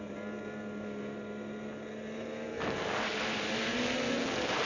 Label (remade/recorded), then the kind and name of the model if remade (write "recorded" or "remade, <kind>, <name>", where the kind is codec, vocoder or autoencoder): recorded